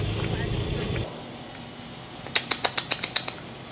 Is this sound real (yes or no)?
yes